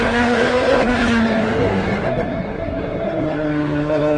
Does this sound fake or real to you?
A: fake